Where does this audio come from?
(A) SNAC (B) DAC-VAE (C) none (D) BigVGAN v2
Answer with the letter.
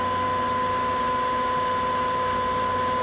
C